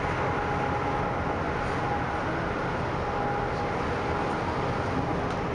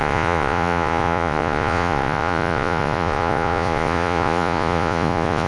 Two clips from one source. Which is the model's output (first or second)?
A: second